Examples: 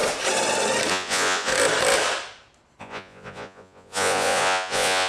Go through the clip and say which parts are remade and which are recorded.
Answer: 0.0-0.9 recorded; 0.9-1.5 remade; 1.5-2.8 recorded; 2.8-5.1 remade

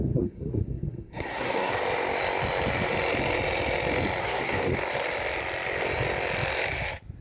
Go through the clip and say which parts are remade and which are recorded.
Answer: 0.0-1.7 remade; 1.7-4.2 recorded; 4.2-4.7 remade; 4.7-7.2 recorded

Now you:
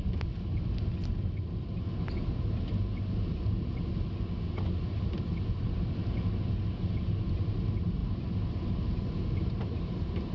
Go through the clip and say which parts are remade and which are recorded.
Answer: 0.0-10.3 recorded

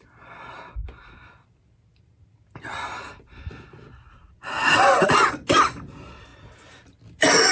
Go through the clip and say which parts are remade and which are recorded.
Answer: 0.0-7.5 recorded